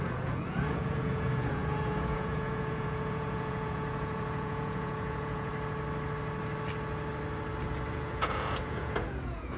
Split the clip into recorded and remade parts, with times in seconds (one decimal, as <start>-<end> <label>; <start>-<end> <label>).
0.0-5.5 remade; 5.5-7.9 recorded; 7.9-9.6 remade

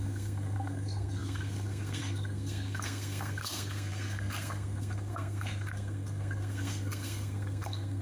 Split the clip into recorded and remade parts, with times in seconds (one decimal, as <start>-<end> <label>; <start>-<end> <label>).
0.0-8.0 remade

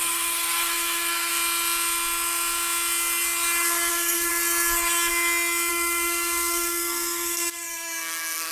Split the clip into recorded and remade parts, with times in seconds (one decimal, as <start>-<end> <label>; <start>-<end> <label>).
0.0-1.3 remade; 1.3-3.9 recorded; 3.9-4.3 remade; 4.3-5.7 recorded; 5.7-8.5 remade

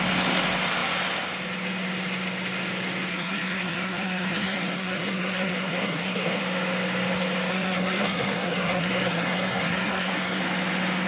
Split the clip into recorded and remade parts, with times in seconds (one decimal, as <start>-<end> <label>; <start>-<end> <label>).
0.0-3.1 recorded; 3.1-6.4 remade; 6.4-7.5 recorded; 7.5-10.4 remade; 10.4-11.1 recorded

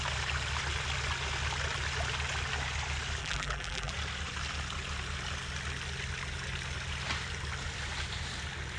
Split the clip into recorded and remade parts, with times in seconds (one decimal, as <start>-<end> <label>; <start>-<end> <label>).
0.0-3.2 recorded; 3.2-3.9 remade; 3.9-8.8 recorded

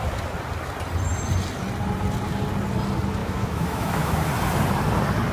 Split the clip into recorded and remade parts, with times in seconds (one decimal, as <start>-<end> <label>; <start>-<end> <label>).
0.0-3.2 recorded; 3.2-4.2 remade; 4.2-5.3 recorded